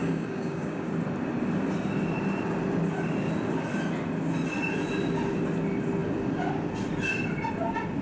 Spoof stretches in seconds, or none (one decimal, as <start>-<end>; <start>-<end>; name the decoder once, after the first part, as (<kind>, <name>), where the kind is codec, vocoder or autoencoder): 0.0-0.9 (codec, DAC)